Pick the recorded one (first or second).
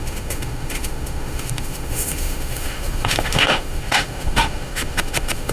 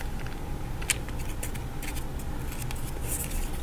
second